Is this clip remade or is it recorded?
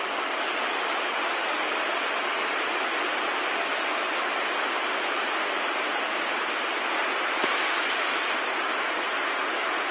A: remade